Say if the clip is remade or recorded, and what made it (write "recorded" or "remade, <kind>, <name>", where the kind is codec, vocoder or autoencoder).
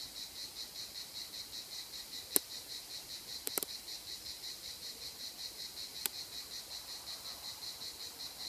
recorded